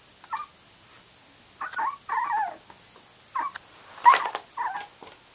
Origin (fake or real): real